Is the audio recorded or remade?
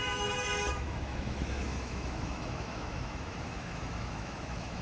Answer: remade